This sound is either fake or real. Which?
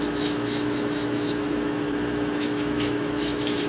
fake